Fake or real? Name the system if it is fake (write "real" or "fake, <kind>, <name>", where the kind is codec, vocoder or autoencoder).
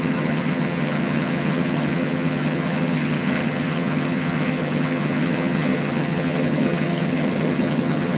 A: fake, vocoder, HiFi-GAN